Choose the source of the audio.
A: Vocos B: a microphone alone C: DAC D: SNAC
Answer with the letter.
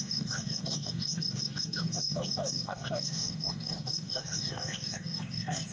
C